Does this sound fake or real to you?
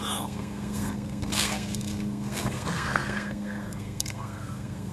fake